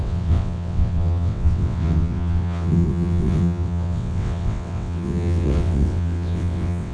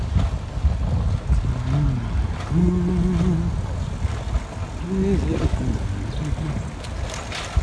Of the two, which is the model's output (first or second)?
first